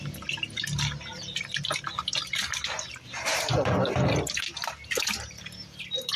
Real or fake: real